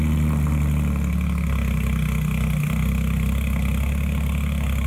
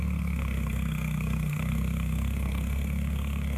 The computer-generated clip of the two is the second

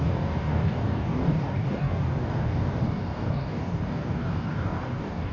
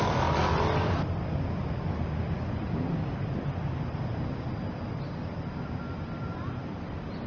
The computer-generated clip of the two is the first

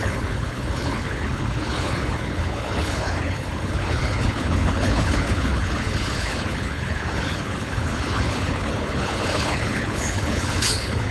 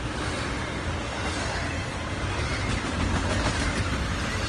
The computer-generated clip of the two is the first